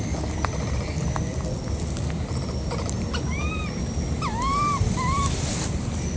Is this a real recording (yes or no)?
yes